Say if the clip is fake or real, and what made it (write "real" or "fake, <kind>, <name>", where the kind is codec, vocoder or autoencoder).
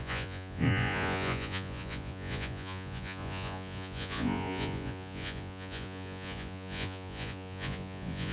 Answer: fake, vocoder, Vocos